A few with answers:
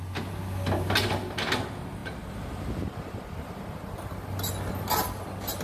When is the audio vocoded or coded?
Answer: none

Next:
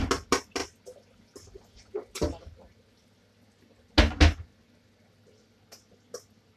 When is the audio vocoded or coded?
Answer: none

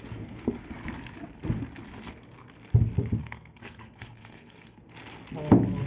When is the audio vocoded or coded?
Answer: 3.2-4.8

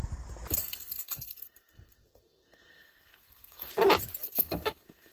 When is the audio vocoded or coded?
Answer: 0.6-3.7; 4.2-5.1